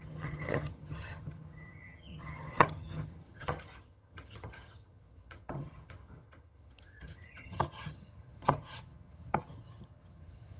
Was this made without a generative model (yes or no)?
no